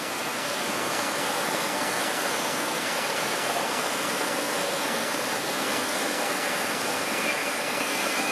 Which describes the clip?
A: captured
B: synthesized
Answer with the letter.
B